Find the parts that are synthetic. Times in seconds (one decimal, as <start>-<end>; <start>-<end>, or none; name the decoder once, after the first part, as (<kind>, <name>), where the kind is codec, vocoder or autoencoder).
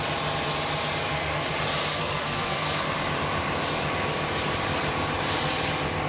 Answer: 1.0-1.5 (codec, SNAC); 1.9-2.9